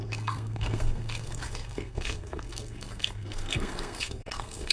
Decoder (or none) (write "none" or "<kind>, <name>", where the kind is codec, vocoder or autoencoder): codec, SNAC